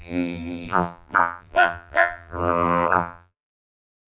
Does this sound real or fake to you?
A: fake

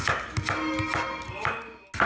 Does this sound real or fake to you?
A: real